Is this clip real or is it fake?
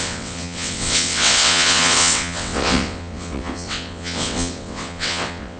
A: fake